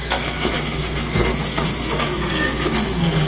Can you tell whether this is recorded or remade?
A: remade